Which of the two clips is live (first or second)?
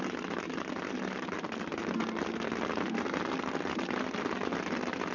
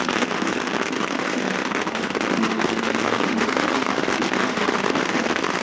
first